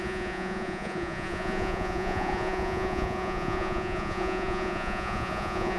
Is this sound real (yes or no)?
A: no